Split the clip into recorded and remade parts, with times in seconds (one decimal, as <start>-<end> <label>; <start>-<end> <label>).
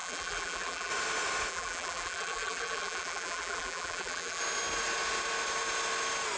0.0-0.9 remade; 0.9-1.5 recorded; 1.5-4.4 remade; 4.4-6.4 recorded